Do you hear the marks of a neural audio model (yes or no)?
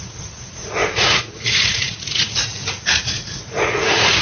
yes